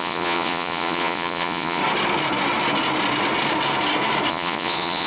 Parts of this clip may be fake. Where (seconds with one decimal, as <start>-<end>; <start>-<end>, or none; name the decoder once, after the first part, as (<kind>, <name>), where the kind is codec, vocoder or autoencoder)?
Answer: 0.0-1.8 (vocoder, Vocos); 4.3-5.1